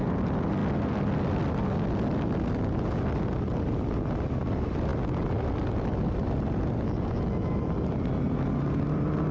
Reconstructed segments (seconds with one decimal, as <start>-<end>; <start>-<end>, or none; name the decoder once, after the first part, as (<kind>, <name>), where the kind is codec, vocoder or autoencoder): none